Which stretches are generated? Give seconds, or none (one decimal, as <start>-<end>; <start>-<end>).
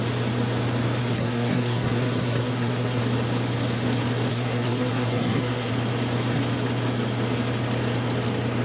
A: 1.0-3.0; 4.3-5.7